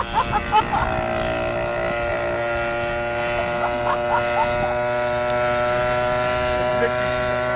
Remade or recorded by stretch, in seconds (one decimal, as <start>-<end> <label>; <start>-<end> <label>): 0.0-7.6 recorded